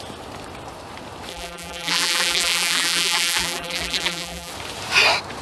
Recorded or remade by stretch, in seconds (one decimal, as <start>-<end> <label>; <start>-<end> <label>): 0.0-1.3 recorded; 1.3-4.5 remade; 4.5-5.4 recorded